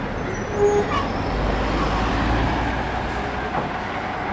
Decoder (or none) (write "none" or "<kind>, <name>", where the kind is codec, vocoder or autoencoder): none